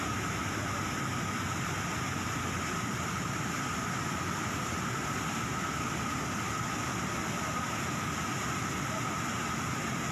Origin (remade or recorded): recorded